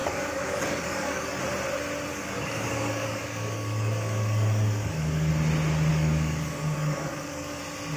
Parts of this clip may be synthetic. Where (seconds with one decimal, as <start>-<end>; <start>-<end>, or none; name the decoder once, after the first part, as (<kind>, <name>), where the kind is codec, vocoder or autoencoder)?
0.0-1.4 (codec, DAC); 2.1-5.3; 5.9-7.6